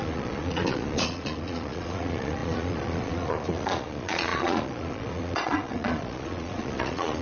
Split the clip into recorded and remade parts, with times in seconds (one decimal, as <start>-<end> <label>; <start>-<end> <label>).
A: 0.0-7.2 remade